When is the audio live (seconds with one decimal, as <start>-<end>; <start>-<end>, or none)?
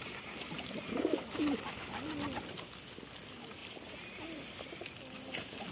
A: 0.0-5.7